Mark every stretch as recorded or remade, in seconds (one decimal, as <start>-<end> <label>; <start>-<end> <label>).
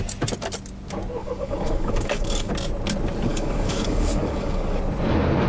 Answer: 0.0-1.2 recorded; 1.2-2.5 remade; 2.5-3.3 recorded; 3.3-4.8 remade; 4.8-5.5 recorded